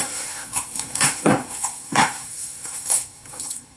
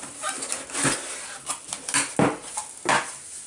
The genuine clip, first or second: second